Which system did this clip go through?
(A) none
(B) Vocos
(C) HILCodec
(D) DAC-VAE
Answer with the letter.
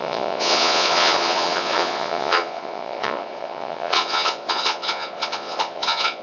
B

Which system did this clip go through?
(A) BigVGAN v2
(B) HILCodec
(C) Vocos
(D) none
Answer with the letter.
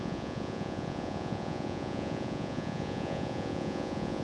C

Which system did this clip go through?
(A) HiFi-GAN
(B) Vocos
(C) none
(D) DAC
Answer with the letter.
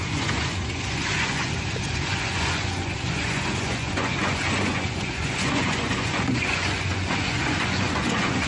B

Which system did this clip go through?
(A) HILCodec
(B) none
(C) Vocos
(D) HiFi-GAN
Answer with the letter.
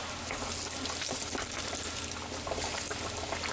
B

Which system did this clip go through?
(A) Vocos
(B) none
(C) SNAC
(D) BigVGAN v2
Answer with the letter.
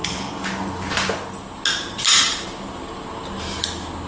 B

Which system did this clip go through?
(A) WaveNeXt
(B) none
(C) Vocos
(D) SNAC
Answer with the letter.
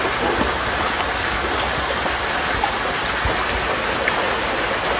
B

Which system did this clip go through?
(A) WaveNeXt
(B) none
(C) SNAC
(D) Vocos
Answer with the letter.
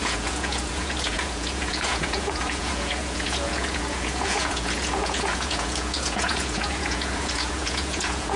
D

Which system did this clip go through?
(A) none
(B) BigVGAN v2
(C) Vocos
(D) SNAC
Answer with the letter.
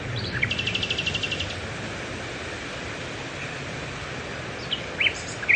A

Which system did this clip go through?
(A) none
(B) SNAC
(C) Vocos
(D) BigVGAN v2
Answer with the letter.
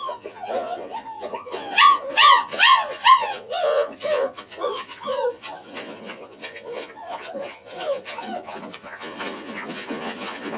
C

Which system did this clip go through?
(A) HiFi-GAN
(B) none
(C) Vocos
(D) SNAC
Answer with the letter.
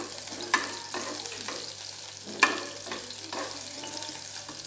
B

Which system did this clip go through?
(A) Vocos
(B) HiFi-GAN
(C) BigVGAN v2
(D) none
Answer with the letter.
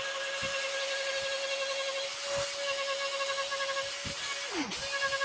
D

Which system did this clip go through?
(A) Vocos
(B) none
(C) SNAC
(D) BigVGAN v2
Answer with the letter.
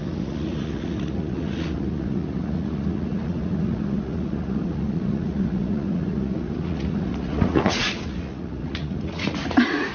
A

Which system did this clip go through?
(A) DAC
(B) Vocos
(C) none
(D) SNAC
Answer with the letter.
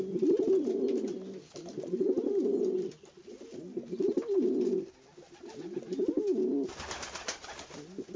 C